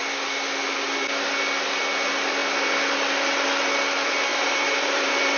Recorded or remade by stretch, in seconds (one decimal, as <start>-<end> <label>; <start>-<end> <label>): 0.0-4.3 recorded; 4.3-5.4 remade